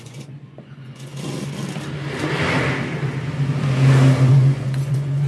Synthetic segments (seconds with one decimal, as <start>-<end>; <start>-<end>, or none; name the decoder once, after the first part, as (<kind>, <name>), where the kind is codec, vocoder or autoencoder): 0.0-1.1 (vocoder, Vocos); 4.3-5.3